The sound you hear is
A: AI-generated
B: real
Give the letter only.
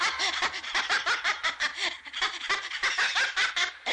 B